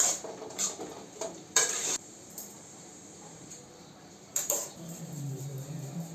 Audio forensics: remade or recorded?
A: remade